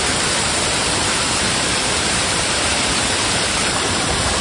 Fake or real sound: fake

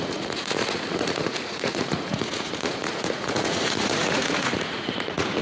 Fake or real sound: fake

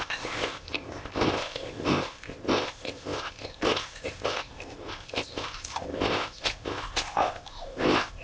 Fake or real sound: fake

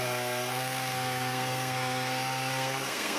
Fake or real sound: fake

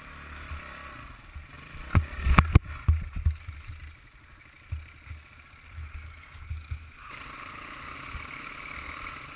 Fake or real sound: real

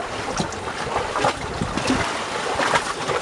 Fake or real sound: real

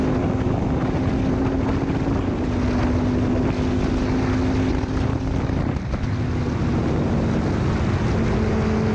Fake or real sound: real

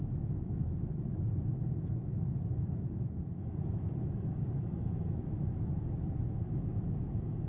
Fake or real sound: fake